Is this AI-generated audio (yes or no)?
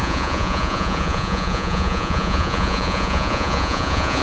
yes